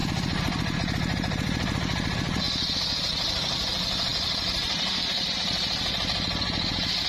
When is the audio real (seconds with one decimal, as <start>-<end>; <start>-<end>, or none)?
2.4-4.1; 5.4-7.1

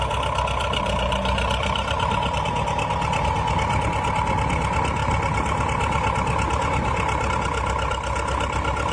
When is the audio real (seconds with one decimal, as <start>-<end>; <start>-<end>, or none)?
0.0-0.6; 2.5-8.9

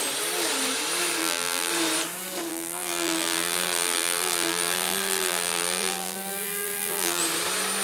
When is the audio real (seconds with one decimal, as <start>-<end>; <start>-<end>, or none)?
0.0-1.2; 1.7-2.5; 7.2-7.8

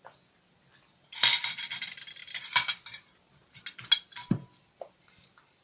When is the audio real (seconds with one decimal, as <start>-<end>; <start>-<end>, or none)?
0.0-2.2; 3.6-5.6

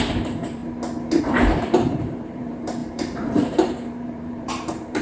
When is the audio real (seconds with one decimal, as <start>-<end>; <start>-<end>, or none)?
0.6-1.2

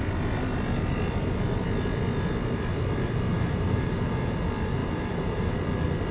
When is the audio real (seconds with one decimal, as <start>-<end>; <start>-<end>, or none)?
0.0-3.3; 4.3-4.8; 5.5-6.1

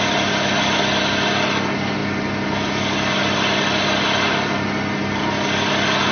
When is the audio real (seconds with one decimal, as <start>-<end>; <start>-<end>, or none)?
0.0-6.1